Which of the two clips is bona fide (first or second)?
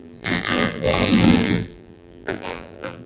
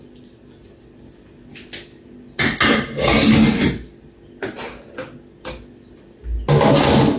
second